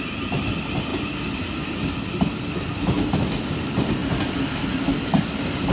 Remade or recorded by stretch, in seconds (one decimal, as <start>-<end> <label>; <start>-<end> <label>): 0.0-5.7 recorded